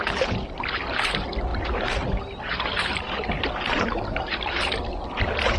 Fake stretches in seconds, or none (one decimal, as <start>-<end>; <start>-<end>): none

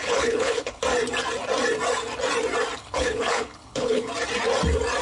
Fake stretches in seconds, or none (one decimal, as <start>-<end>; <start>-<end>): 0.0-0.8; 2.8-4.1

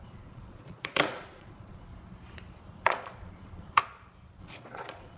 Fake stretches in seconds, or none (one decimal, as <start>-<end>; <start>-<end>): 0.0-1.9; 2.6-3.8; 4.4-5.2

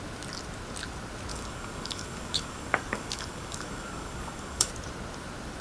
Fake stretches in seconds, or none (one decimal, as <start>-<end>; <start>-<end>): 1.3-4.7